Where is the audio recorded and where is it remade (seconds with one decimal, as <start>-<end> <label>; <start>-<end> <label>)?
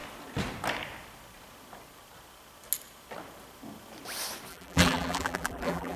0.0-4.5 recorded; 4.5-6.0 remade